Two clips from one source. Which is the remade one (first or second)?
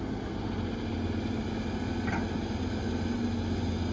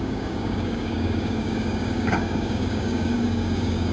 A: second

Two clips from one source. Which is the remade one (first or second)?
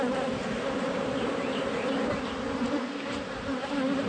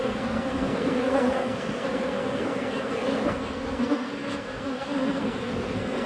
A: second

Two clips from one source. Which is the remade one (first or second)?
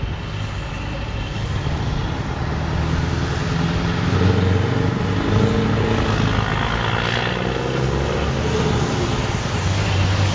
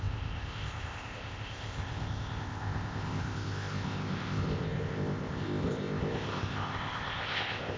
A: second